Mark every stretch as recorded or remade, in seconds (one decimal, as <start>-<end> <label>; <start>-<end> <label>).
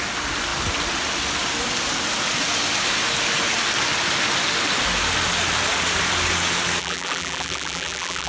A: 0.0-6.8 recorded; 6.8-8.3 remade